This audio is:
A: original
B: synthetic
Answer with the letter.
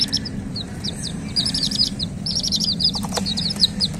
B